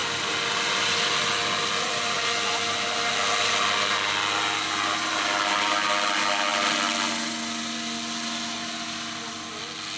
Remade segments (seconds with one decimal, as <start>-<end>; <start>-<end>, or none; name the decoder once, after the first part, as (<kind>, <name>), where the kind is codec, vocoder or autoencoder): none